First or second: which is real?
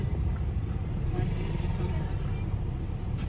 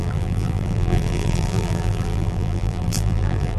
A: first